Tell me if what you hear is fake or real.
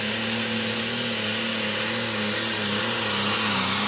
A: real